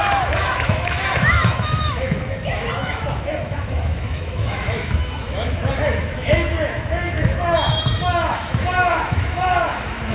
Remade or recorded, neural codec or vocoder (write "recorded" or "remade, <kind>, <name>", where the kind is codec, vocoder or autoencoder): remade, autoencoder, DAC-VAE